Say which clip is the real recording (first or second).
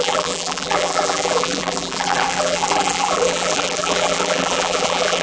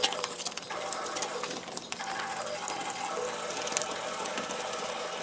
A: second